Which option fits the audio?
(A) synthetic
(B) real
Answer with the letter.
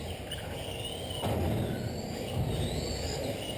B